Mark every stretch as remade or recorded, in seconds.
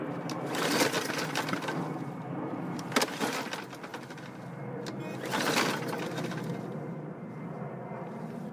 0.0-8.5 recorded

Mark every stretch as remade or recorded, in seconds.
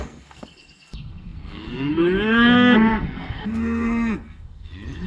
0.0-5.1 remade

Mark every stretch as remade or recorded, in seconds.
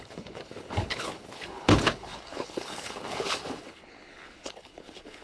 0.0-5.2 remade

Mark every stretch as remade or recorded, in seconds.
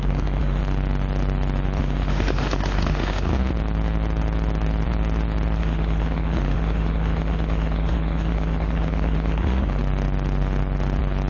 0.0-0.6 remade; 0.6-1.8 recorded; 1.8-3.3 remade; 3.3-5.6 recorded; 5.6-9.8 remade; 9.8-11.3 recorded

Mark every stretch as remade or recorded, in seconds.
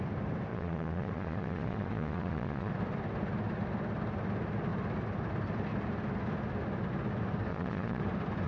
0.0-0.5 recorded; 0.5-2.7 remade; 2.7-7.5 recorded; 7.5-8.0 remade; 8.0-8.5 recorded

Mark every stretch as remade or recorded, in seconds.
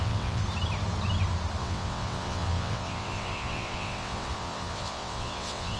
0.0-0.4 remade; 0.4-1.6 recorded; 1.6-5.8 remade